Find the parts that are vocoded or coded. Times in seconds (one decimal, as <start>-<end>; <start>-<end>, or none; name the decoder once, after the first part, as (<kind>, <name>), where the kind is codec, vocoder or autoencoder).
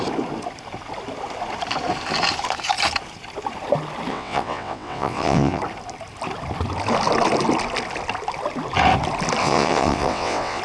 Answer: 4.1-5.6 (vocoder, WaveNeXt); 9.4-10.6